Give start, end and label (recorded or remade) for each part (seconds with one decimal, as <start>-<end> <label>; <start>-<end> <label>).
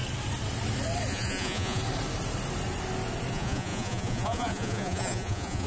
0.0-1.1 recorded; 1.1-1.8 remade; 1.8-3.3 recorded; 3.3-5.7 remade